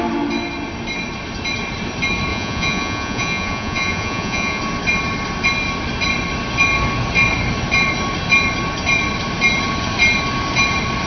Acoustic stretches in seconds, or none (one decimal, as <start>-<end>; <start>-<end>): 0.0-2.3; 4.6-11.1

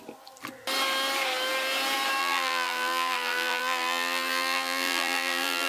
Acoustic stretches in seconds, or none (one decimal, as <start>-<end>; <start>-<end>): 0.0-2.2

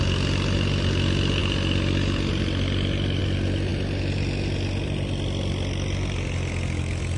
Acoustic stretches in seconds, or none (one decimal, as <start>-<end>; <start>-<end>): 0.0-7.2

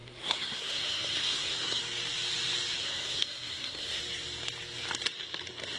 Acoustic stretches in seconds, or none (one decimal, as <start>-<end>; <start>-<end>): 1.8-2.8; 4.0-5.8

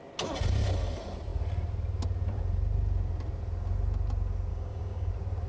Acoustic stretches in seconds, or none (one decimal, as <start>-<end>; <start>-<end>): 0.0-4.5; 5.1-5.5

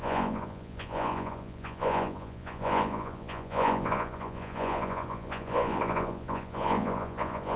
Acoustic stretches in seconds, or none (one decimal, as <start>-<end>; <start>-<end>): none